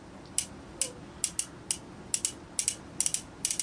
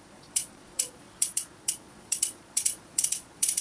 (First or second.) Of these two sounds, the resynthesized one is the second